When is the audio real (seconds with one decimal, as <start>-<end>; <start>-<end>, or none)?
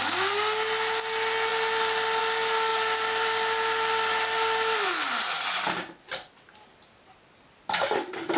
0.0-8.4